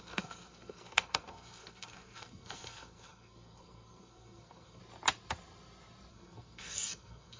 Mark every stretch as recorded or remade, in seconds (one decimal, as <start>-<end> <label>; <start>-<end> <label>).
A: 0.0-4.8 remade; 4.8-6.1 recorded; 6.1-7.4 remade